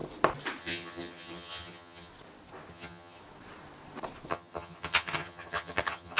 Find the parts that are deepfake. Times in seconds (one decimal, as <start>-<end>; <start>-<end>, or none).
0.6-2.1; 2.7-3.2; 4.3-6.2